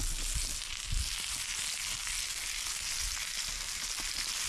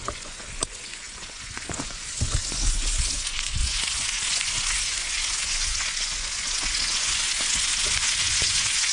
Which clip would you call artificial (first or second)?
second